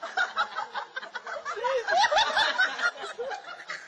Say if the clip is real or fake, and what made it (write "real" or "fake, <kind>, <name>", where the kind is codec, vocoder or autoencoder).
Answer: real